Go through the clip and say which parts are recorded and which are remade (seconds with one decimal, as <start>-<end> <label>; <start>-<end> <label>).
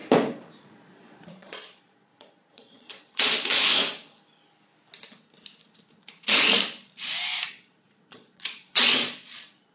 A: 0.0-0.6 recorded; 0.6-3.7 remade; 3.7-7.5 recorded; 7.5-9.7 remade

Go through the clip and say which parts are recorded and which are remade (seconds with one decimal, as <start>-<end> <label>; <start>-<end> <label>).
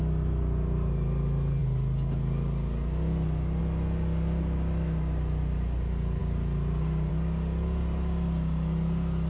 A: 0.0-9.3 recorded